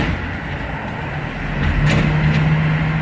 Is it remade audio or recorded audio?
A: recorded